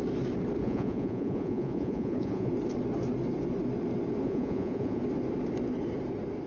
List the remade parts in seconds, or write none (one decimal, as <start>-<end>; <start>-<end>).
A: 0.6-2.5; 4.2-5.0